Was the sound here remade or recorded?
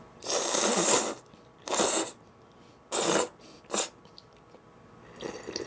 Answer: recorded